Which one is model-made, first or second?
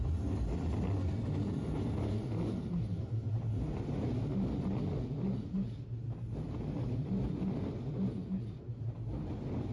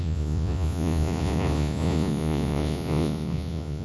second